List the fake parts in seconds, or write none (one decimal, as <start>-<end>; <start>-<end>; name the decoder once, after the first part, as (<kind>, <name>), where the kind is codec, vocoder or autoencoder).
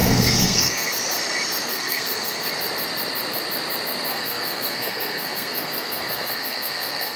0.0-0.9 (codec, SNAC); 1.7-2.5; 4.1-7.2